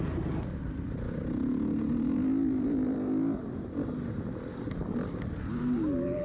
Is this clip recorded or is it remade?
recorded